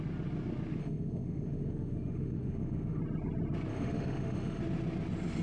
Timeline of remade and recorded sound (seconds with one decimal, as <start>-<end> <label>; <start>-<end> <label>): 0.0-0.8 recorded; 0.8-3.0 remade; 3.0-3.7 recorded; 3.7-4.6 remade; 4.6-5.4 recorded